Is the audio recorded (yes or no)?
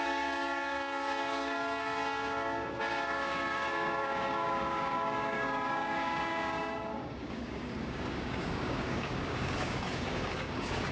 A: no